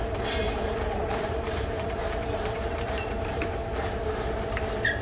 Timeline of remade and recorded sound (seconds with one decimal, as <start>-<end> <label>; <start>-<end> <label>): 0.0-0.4 recorded; 0.4-3.4 remade; 3.4-5.0 recorded